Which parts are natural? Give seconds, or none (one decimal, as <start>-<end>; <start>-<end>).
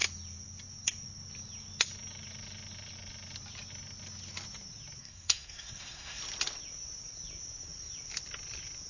0.0-5.0; 6.2-8.9